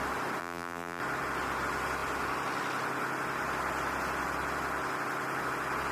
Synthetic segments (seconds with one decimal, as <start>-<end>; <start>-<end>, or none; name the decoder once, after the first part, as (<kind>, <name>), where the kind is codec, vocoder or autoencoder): 0.4-1.0 (vocoder, BigVGAN v2)